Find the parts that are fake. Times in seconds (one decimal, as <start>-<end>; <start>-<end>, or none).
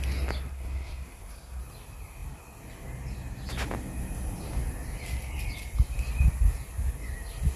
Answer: 0.5-1.6